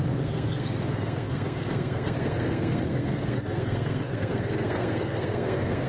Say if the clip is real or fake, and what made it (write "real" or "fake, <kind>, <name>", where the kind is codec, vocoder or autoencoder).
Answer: fake, codec, SNAC